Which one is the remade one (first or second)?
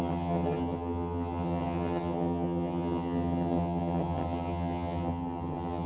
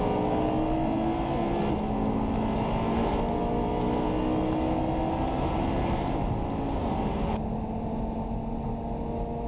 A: first